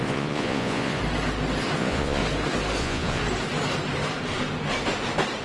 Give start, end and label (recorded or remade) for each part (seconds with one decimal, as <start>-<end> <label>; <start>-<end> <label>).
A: 0.0-1.0 remade; 1.0-1.8 recorded; 1.8-2.2 remade; 2.2-2.8 recorded; 2.8-3.2 remade; 3.2-5.4 recorded